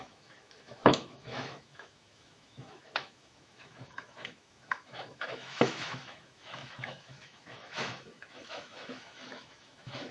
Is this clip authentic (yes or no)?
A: no